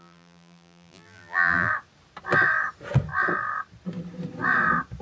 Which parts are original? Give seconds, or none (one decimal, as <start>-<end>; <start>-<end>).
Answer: 1.7-5.0